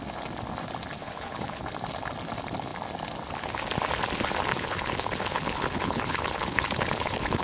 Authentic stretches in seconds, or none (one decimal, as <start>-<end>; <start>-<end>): 0.0-1.0; 1.6-4.5